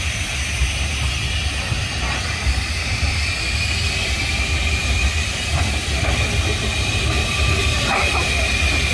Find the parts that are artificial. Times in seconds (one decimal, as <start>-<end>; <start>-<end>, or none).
none